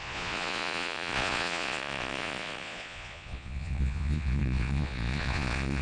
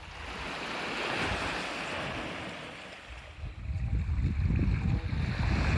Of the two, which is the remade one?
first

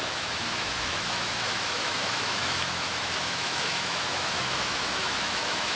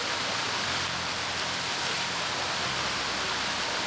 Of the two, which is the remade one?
first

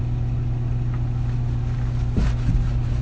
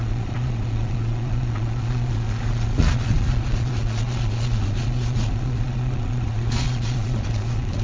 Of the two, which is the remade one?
second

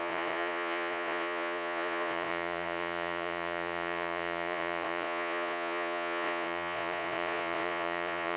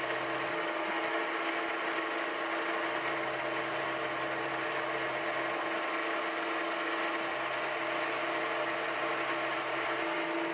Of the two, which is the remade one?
first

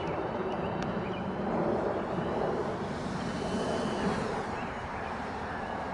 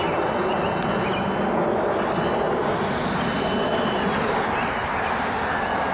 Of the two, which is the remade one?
first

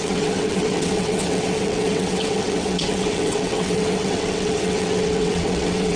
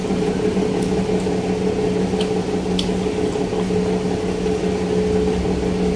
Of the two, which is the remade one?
first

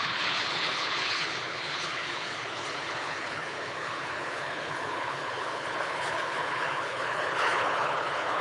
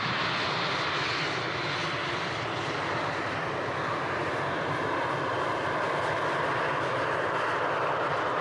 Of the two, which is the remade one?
first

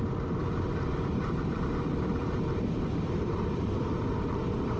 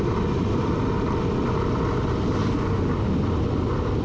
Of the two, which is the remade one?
first